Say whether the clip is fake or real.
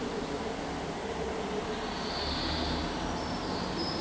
real